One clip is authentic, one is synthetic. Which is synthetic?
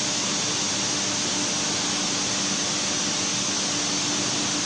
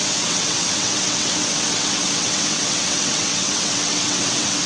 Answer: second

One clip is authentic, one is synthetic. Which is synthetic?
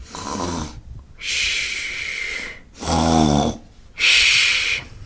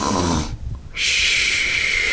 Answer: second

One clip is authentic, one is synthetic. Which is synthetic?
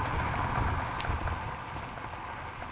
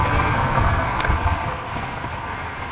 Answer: second